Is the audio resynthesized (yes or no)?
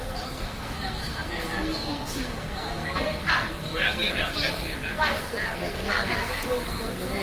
yes